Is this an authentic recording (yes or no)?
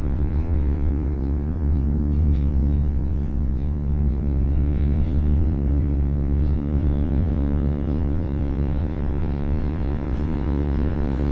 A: no